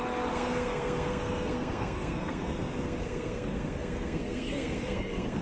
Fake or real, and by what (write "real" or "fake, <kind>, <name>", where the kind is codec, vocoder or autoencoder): fake, codec, SNAC